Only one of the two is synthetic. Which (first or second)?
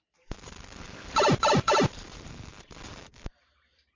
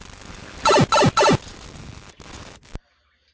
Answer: first